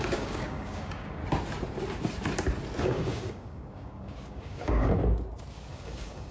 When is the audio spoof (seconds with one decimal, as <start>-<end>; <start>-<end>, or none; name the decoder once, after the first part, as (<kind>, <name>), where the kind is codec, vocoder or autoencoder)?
0.0-1.2 (codec, DAC); 2.8-5.0; 5.7-6.3

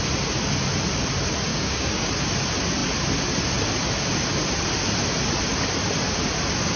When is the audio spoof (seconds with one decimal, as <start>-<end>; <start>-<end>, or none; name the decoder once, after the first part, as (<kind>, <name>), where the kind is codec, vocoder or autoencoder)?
1.5-2.1 (codec, DAC)

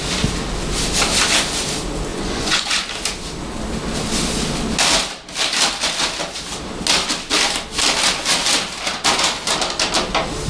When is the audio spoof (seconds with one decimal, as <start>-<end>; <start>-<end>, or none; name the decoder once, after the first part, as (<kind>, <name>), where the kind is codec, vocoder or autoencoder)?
2.1-2.9 (vocoder, Vocos)

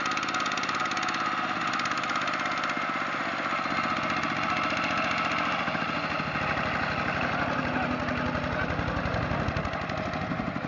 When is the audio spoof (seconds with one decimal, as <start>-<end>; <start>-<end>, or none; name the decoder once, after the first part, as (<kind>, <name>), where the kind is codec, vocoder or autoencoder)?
none

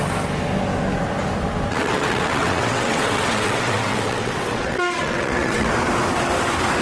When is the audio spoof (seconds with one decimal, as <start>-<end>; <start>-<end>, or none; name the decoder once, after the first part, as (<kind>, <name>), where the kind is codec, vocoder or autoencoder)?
1.7-5.7 (vocoder, WaveNeXt)